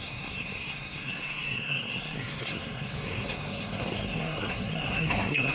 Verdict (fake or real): fake